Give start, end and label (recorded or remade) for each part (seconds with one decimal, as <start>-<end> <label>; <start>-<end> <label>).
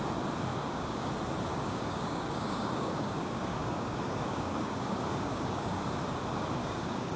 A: 0.0-0.5 recorded; 0.5-1.1 remade; 1.1-1.5 recorded; 1.5-5.8 remade; 5.8-6.6 recorded; 6.6-7.2 remade